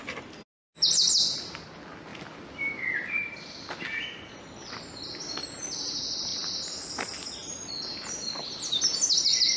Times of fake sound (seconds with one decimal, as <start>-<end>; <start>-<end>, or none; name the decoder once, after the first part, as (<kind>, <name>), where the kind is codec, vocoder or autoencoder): none